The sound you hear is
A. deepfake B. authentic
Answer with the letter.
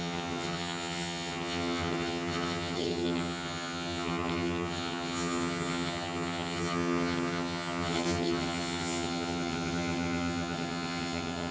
A